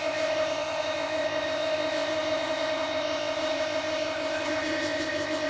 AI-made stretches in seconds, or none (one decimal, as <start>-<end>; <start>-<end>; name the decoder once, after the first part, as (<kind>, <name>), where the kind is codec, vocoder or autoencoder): 0.0-5.5 (codec, ZipCodec)